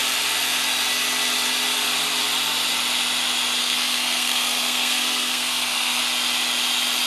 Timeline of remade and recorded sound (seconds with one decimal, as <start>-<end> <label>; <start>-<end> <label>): 0.0-3.6 recorded; 3.6-6.0 remade; 6.0-7.1 recorded

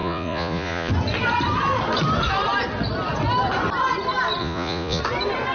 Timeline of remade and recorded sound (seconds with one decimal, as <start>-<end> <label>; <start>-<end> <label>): 0.0-0.9 remade; 0.9-4.4 recorded; 4.4-5.0 remade; 5.0-5.5 recorded

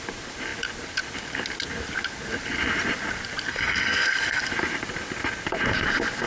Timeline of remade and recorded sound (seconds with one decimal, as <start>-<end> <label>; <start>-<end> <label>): 0.0-3.5 recorded; 3.5-4.4 remade; 4.4-6.3 recorded

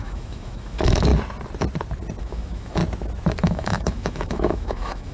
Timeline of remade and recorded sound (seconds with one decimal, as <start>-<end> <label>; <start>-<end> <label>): 0.0-1.1 remade; 1.1-2.2 recorded; 2.2-2.8 remade; 2.8-3.4 recorded; 3.4-5.1 remade

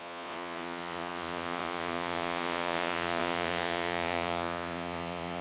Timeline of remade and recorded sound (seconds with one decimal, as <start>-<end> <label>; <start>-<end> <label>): 0.0-5.4 remade